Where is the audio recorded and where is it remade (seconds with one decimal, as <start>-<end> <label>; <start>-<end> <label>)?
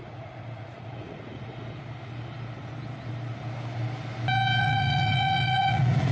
0.0-1.5 remade; 1.5-4.6 recorded; 4.6-6.1 remade